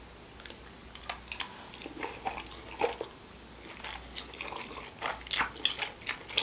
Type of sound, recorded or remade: recorded